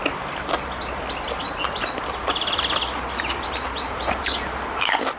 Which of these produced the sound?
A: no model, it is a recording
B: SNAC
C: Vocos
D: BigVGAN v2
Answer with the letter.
D